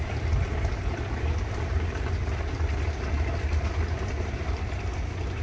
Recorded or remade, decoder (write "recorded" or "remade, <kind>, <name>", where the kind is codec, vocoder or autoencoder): remade, vocoder, BigVGAN v2